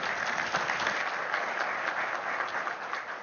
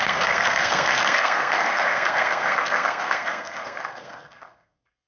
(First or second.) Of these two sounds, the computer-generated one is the second